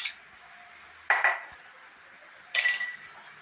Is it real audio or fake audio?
real